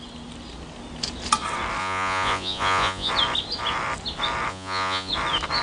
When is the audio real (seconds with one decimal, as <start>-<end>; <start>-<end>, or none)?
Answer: 0.0-1.8; 3.1-4.5; 5.1-5.6